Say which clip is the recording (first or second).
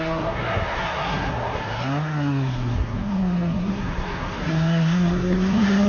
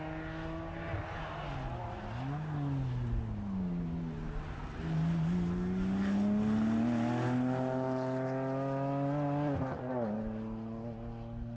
second